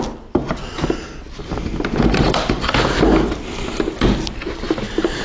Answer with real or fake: real